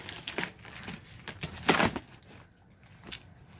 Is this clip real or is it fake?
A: real